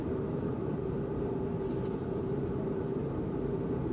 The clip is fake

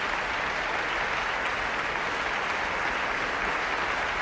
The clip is real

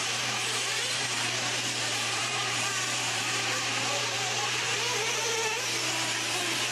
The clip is fake